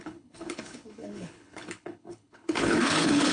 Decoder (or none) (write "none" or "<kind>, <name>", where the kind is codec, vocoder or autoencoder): codec, HILCodec